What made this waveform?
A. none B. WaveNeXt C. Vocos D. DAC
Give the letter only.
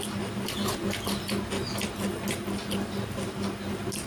A